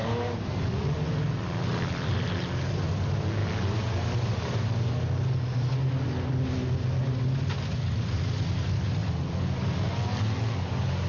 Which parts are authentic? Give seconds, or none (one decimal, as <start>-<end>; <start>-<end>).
0.0-11.1